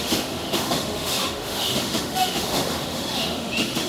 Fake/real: fake